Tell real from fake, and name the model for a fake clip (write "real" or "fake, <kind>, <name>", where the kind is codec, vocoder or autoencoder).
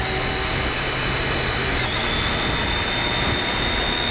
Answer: real